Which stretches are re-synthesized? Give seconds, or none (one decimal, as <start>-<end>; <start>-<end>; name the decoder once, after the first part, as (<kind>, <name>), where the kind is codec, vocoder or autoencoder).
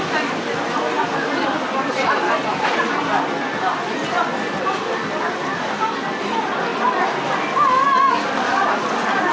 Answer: none